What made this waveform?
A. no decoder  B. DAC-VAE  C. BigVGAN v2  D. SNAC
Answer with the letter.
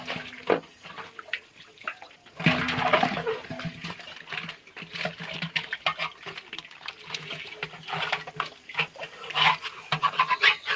A